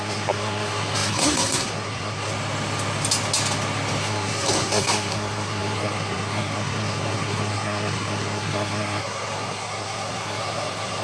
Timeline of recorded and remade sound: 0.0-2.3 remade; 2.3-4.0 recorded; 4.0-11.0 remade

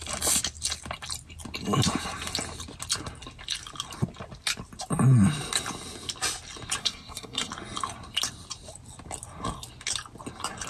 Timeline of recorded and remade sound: 0.0-6.8 recorded; 6.8-7.5 remade; 7.5-10.7 recorded

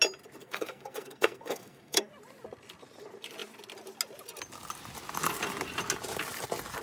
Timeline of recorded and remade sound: 0.0-0.4 recorded; 0.4-2.1 remade; 2.1-6.8 recorded

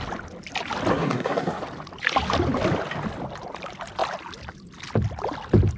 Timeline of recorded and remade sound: 0.0-0.9 recorded; 0.9-1.6 remade; 1.6-5.8 recorded

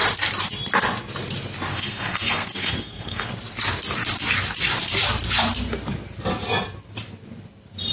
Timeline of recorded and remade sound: 0.0-1.7 recorded; 1.7-3.3 remade; 3.3-7.9 recorded

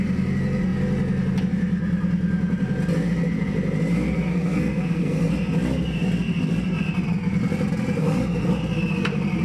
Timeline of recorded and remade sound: 0.0-4.3 recorded; 4.3-5.3 remade; 5.3-8.0 recorded; 8.0-8.5 remade; 8.5-9.4 recorded